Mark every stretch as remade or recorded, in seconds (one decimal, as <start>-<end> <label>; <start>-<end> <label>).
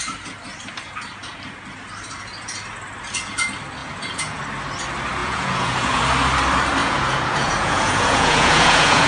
0.0-3.8 recorded; 3.8-4.4 remade; 4.4-5.2 recorded; 5.2-6.0 remade; 6.0-6.8 recorded; 6.8-9.1 remade